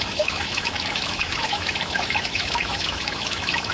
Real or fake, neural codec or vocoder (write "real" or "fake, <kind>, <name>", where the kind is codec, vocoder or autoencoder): fake, autoencoder, DAC-VAE